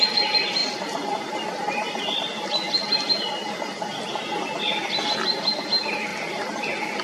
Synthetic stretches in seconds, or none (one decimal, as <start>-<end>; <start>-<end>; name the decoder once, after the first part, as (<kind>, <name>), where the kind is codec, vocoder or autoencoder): none